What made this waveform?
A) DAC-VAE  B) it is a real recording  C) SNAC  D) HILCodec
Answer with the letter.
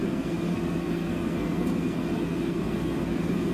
C